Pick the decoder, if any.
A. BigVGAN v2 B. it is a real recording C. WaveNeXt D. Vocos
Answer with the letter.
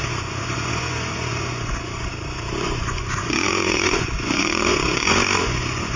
D